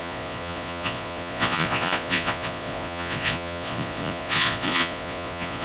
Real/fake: fake